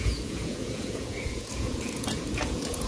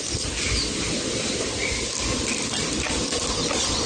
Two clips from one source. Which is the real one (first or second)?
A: second